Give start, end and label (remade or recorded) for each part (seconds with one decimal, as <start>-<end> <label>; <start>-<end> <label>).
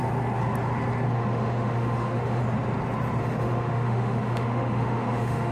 0.0-1.1 recorded; 1.1-2.4 remade; 2.4-3.2 recorded; 3.2-5.5 remade